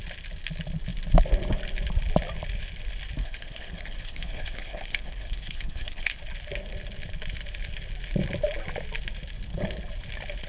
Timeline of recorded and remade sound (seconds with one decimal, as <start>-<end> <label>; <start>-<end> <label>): 0.0-3.2 recorded; 3.2-6.2 remade; 6.2-10.5 recorded